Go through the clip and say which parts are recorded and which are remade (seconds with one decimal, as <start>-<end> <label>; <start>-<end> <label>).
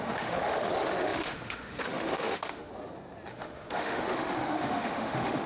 0.0-2.7 remade; 2.7-3.3 recorded; 3.3-5.5 remade